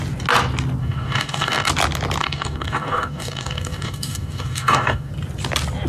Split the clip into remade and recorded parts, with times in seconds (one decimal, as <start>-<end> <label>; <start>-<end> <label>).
0.0-0.8 recorded; 0.8-1.7 remade; 1.7-2.2 recorded; 2.2-5.1 remade; 5.1-5.9 recorded

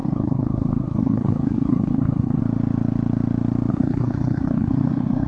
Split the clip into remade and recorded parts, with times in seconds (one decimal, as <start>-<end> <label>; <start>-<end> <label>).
0.0-2.4 remade; 2.4-3.7 recorded; 3.7-5.3 remade

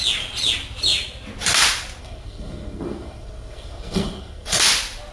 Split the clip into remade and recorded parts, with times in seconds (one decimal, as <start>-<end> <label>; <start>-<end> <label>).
0.0-2.0 recorded; 2.0-4.6 remade; 4.6-5.1 recorded

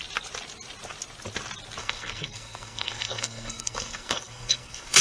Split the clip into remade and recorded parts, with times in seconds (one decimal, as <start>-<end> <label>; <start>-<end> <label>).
0.0-1.8 recorded; 1.8-5.0 remade

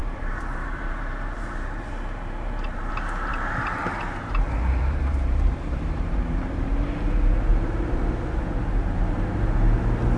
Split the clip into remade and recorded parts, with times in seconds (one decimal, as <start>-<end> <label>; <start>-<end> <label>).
0.0-2.9 remade; 2.9-3.3 recorded; 3.3-6.4 remade; 6.4-7.5 recorded; 7.5-8.4 remade; 8.4-10.2 recorded